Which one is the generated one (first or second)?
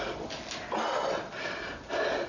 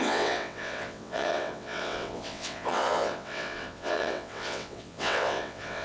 second